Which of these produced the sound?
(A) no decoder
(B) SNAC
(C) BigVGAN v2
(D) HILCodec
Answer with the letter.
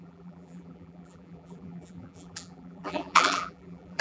C